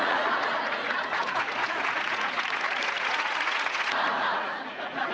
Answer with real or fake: fake